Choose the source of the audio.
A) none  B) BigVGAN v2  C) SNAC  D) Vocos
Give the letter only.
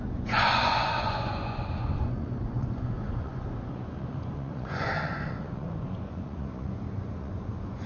D